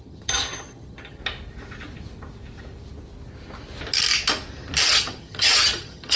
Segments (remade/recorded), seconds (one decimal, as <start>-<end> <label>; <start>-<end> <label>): 0.0-1.2 remade; 1.2-4.9 recorded; 4.9-6.2 remade